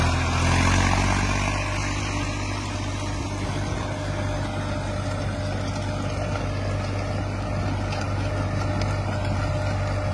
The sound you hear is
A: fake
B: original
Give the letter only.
B